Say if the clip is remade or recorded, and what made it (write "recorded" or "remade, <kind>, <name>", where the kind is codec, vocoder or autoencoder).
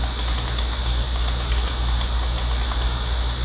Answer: recorded